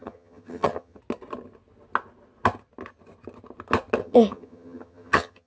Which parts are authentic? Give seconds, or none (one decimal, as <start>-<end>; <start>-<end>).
1.0-4.0